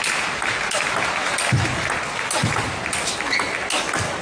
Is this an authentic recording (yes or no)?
yes